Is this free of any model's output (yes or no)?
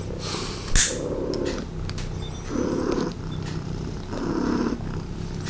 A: yes